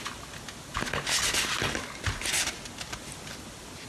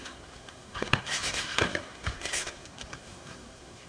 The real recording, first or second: first